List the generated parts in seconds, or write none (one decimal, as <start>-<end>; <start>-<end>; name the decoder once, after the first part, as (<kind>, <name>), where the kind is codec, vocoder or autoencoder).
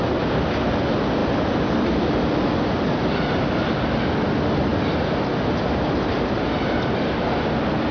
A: none